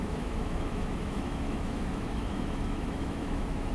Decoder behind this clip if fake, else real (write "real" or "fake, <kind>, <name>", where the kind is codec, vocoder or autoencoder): fake, autoencoder, DAC-VAE